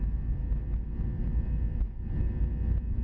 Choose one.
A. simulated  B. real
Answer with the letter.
B